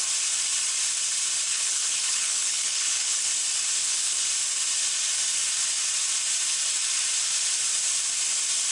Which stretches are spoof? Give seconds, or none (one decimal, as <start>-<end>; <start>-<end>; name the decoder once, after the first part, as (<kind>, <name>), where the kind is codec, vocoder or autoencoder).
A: 1.5-3.3 (codec, HILCodec); 3.8-4.3